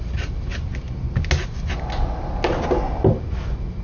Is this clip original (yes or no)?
yes